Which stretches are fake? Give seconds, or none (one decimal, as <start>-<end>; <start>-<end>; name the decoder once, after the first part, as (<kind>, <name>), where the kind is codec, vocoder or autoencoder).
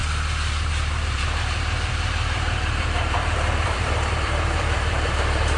0.7-5.6 (vocoder, BigVGAN v2)